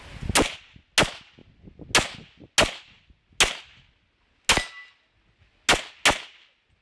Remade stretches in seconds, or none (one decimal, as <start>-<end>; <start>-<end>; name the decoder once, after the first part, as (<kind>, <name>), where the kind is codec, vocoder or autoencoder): none